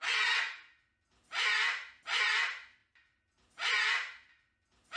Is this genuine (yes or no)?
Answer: yes